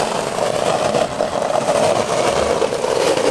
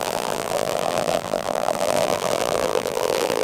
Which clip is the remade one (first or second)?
second